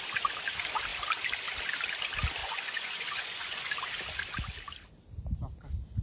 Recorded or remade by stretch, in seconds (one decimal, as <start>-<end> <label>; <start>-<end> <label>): 0.0-2.4 recorded; 2.4-3.7 remade; 3.7-6.0 recorded